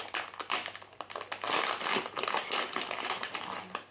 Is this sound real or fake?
real